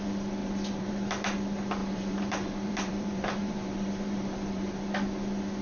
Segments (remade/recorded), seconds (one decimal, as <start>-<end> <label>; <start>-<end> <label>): 0.0-0.4 recorded; 0.4-0.9 remade; 0.9-1.8 recorded; 1.8-4.8 remade; 4.8-5.6 recorded